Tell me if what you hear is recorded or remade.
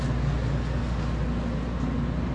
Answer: recorded